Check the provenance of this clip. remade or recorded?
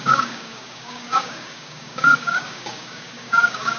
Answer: remade